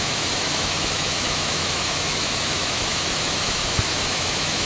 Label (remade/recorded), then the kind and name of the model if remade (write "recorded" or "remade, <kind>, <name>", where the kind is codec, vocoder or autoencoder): remade, autoencoder, DAC-VAE